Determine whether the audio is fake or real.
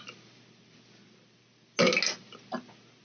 real